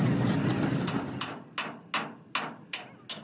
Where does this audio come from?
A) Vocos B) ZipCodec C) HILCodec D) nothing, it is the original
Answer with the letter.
D